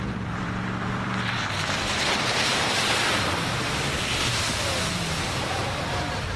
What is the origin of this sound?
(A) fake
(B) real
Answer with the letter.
A